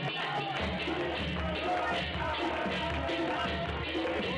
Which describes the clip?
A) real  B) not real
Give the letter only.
A